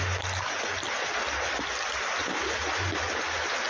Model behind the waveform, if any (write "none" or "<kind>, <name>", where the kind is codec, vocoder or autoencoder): none